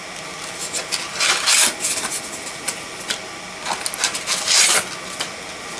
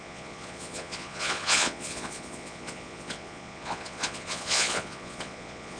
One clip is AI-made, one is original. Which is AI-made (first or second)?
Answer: second